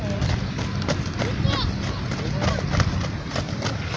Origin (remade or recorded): recorded